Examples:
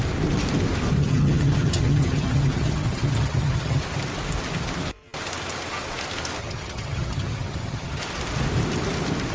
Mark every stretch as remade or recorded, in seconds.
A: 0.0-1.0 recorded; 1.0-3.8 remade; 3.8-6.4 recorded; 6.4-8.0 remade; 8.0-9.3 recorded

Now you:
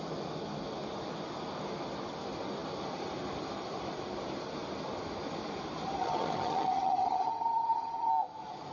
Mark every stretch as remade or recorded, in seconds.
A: 0.0-6.0 recorded; 6.0-8.1 remade; 8.1-8.7 recorded

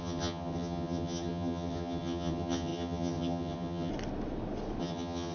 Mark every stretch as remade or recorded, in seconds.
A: 0.0-3.9 remade; 3.9-4.8 recorded; 4.8-5.3 remade

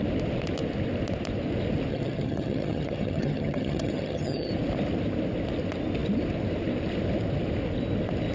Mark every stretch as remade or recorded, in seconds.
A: 0.0-1.9 recorded; 1.9-4.5 remade; 4.5-8.3 recorded

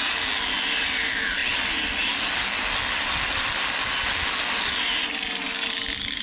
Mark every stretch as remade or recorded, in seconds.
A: 0.0-6.2 recorded

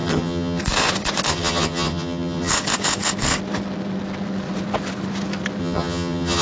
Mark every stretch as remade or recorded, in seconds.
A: 0.0-0.6 remade; 0.6-1.3 recorded; 1.3-2.5 remade; 2.5-5.6 recorded; 5.6-6.4 remade

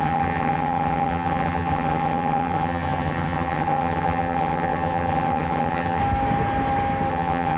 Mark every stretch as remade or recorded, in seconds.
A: 0.0-6.0 remade; 6.0-7.1 recorded; 7.1-7.6 remade